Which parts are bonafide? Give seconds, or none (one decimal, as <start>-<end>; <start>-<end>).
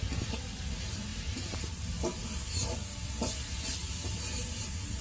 0.0-5.0